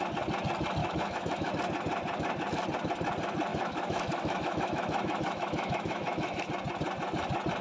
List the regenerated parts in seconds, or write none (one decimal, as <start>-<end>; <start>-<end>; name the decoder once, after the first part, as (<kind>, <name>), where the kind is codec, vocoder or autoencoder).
0.8-1.5 (autoencoder, DAC-VAE); 3.5-6.5